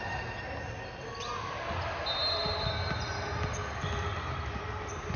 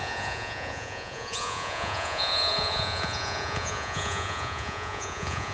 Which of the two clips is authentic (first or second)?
first